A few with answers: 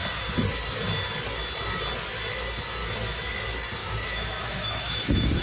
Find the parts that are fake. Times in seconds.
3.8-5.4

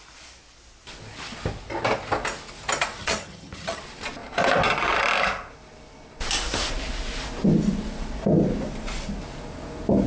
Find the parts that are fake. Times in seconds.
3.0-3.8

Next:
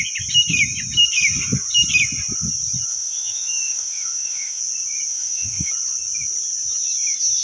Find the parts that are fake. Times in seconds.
2.9-4.6; 5.1-5.7

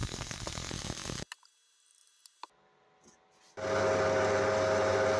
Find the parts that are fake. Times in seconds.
0.0-0.7